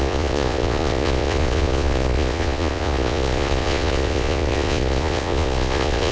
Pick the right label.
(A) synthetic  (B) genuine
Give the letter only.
A